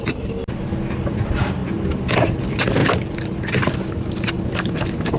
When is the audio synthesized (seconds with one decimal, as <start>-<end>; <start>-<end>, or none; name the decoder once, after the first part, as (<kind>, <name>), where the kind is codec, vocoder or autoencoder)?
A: none